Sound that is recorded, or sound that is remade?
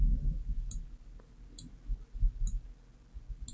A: recorded